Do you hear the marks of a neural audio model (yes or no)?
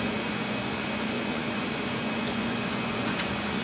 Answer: yes